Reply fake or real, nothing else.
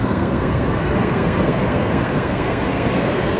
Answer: fake